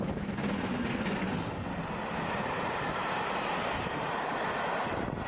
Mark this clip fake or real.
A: real